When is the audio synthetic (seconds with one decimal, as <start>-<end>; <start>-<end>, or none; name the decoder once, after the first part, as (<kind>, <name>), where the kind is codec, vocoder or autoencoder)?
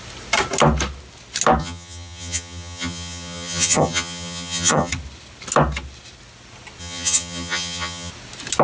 1.6-4.9 (vocoder, HiFi-GAN); 6.8-8.1